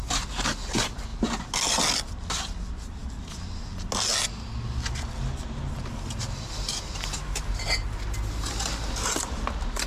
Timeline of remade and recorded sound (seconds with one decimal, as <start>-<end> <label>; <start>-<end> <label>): 0.0-9.9 recorded